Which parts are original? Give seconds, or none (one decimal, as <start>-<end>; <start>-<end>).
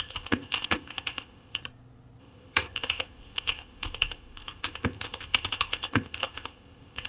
1.6-2.2